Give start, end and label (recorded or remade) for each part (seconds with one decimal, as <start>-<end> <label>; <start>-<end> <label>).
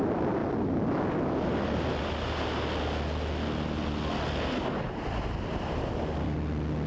0.0-6.9 recorded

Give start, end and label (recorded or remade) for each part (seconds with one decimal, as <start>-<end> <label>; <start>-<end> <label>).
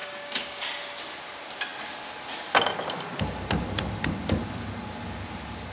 0.0-0.8 remade; 0.8-5.7 recorded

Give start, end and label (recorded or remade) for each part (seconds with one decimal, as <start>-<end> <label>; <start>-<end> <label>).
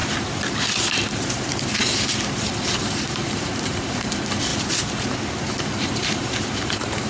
0.0-2.6 recorded; 2.6-4.5 remade; 4.5-5.4 recorded; 5.4-7.1 remade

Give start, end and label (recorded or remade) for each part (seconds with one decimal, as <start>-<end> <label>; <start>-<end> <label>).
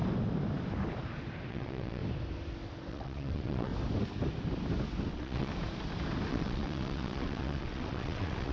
0.0-1.5 recorded; 1.5-2.0 remade; 2.0-2.9 recorded; 2.9-3.7 remade; 3.7-5.1 recorded; 5.1-5.5 remade; 5.5-6.3 recorded; 6.3-8.5 remade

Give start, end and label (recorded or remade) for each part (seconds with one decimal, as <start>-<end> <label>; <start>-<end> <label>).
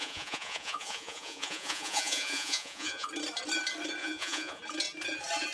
0.0-3.1 remade; 3.1-4.0 recorded; 4.0-4.6 remade; 4.6-5.5 recorded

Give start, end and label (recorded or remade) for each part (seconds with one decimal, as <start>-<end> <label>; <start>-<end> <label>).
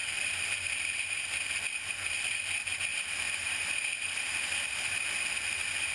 0.0-1.4 remade; 1.4-2.9 recorded; 2.9-4.9 remade; 4.9-5.9 recorded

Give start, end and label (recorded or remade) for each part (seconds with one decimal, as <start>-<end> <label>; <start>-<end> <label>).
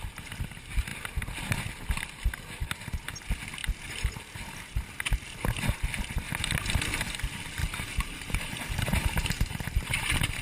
0.0-7.6 recorded; 7.6-10.4 remade